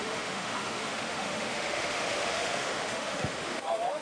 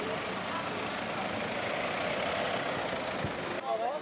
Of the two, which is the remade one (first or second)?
first